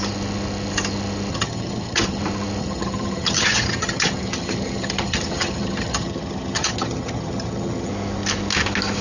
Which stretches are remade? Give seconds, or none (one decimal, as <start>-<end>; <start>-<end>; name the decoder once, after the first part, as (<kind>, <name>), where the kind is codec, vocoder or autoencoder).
1.3-2.2 (vocoder, HiFi-GAN); 2.6-7.9